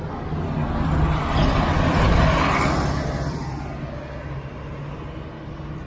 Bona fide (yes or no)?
yes